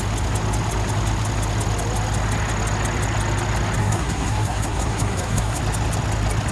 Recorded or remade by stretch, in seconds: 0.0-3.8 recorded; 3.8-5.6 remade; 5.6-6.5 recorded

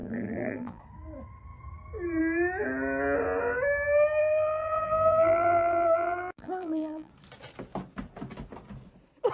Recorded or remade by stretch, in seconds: 0.0-0.8 remade; 0.8-4.2 recorded; 4.2-7.1 remade; 7.1-9.3 recorded

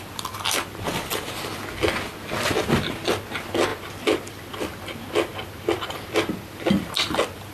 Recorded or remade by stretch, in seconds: 0.0-7.5 recorded

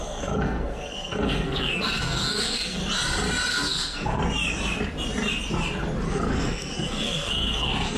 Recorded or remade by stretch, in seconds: 0.0-2.8 remade; 2.8-3.5 recorded; 3.5-4.2 remade; 4.2-6.1 recorded; 6.1-8.0 remade